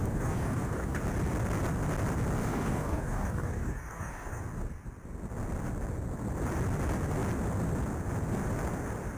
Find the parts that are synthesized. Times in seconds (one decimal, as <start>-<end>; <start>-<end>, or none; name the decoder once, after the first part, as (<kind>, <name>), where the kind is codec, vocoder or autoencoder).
0.0-1.0 (codec, DAC); 2.4-4.4

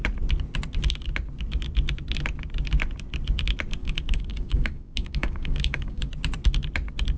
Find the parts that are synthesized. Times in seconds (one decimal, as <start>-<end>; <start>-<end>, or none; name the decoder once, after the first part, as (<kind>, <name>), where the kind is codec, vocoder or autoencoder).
3.8-6.1 (codec, DAC)

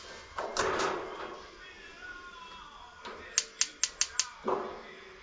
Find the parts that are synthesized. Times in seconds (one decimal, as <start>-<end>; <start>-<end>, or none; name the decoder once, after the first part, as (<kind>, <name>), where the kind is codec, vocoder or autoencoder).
none

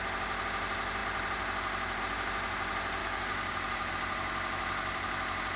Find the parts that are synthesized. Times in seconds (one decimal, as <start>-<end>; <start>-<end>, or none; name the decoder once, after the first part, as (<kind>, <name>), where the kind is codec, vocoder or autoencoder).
3.0-3.9 (codec, DAC)

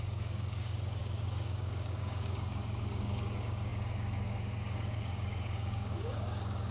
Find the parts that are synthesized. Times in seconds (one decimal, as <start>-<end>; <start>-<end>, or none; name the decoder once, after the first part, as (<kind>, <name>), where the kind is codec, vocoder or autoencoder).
0.0-6.7 (codec, DAC)

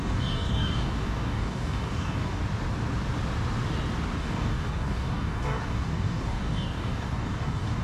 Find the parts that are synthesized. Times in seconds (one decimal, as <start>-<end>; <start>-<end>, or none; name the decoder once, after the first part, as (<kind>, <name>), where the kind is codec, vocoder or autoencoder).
0.0-2.4 (codec, DAC); 4.2-7.8

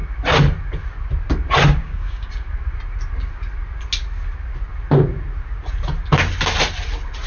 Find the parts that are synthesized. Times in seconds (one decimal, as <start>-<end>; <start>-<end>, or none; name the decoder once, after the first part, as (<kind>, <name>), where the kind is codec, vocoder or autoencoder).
1.8-2.3 (codec, DAC)